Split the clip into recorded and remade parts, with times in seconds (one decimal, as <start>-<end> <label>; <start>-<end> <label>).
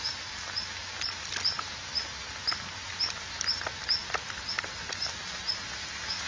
0.0-6.3 recorded